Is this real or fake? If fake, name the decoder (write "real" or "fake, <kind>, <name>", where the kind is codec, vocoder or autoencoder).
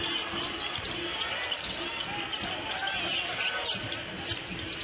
real